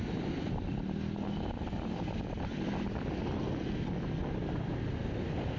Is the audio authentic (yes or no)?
yes